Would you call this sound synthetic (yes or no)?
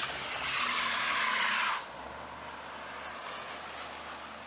no